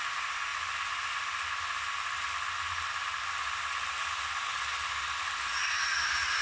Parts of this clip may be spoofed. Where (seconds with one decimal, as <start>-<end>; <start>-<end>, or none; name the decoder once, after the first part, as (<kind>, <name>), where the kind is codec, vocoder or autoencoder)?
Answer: 0.5-3.2 (vocoder, BigVGAN v2); 4.5-5.5